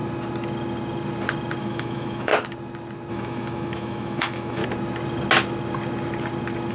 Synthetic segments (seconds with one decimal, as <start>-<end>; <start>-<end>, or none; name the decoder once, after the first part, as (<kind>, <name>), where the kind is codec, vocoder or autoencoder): 1.6-2.3 (autoencoder, DAC-VAE); 3.1-4.6